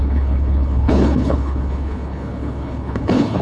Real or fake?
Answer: fake